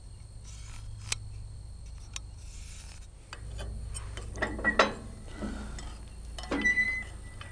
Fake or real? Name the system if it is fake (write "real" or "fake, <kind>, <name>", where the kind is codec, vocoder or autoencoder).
real